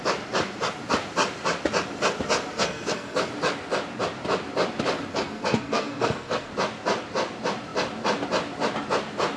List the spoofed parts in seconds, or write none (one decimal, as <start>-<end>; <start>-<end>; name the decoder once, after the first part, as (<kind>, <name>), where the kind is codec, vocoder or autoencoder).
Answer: 2.5-3.3 (codec, SNAC); 5.1-6.5